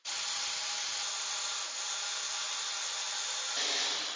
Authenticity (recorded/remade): remade